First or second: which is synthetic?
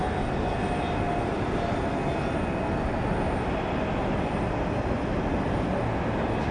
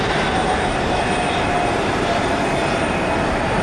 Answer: second